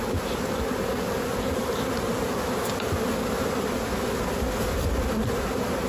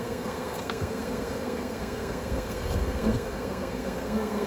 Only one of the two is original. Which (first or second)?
first